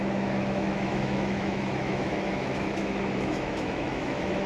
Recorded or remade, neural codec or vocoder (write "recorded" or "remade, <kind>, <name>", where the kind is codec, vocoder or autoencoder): remade, autoencoder, DAC-VAE